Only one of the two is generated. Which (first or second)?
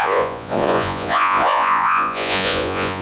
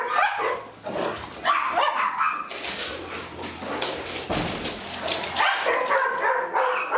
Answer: first